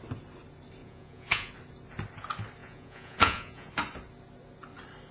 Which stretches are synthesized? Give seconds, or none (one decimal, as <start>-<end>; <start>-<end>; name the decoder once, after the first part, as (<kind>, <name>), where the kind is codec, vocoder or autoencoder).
0.8-1.5 (vocoder, Vocos); 2.6-3.7